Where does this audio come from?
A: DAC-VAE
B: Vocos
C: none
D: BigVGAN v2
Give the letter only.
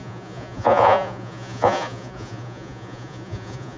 B